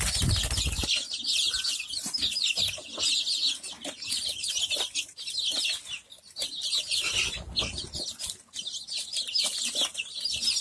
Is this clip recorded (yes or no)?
yes